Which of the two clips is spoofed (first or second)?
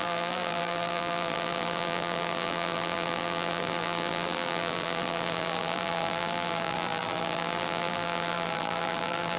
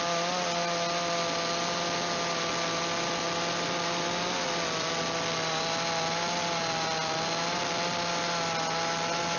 first